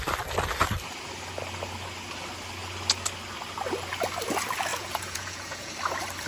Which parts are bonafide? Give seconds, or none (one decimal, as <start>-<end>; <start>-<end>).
0.0-4.7; 5.7-6.3